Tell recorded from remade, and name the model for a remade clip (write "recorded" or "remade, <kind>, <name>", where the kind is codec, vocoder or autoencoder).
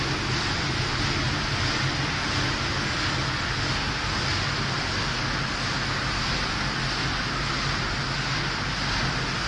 recorded